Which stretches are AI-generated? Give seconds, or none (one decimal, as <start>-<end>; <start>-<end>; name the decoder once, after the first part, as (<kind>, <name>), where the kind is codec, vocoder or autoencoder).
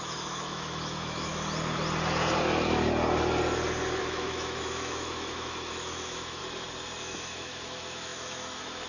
0.0-1.3 (autoencoder, DAC-VAE); 4.0-6.4; 7.0-8.9